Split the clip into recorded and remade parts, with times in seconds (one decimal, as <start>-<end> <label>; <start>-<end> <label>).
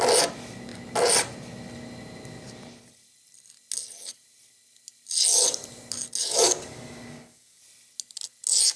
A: 0.0-6.2 recorded; 6.2-7.6 remade; 7.6-8.8 recorded